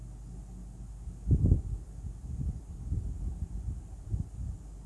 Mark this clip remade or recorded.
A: recorded